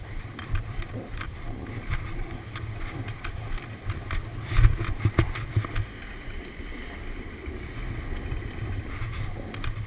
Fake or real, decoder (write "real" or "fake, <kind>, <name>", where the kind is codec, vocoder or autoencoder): real